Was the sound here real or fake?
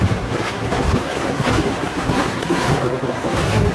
fake